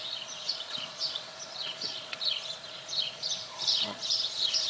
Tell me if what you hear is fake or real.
fake